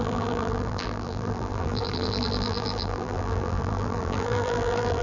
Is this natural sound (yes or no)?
no